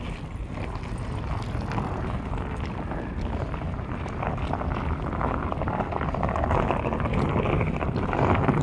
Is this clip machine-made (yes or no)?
no